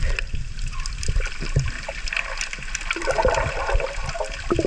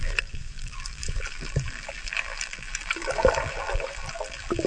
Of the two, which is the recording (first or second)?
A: first